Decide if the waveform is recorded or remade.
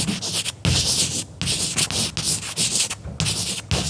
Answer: recorded